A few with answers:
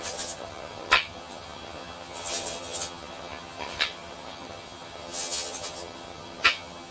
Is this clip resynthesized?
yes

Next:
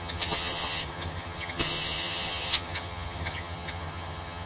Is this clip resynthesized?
yes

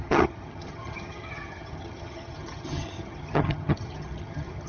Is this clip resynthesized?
yes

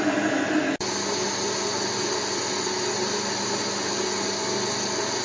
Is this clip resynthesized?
no